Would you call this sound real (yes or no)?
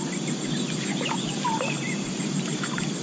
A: yes